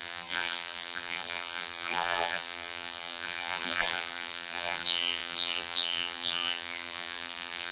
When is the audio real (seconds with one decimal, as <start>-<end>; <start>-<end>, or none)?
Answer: none